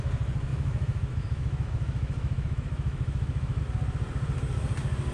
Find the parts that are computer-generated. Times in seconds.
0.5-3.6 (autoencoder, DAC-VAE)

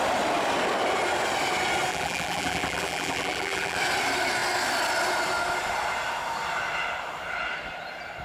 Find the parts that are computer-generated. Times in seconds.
1.9-3.8 (vocoder, BigVGAN v2)

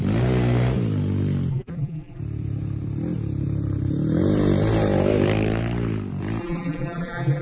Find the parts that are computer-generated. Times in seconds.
1.5-2.2 (vocoder, BigVGAN v2); 6.4-7.4

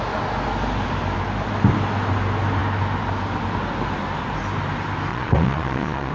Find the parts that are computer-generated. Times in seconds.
5.1-6.1 (vocoder, Vocos)

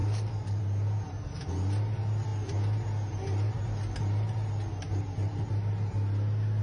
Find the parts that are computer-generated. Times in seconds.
0.0-0.6 (codec, DAC)

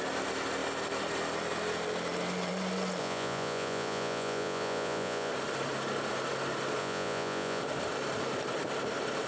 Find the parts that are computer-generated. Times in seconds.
3.0-5.3 (vocoder, Vocos); 6.8-7.6